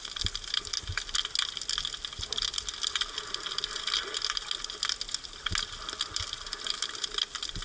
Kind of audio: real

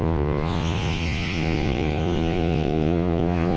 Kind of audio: fake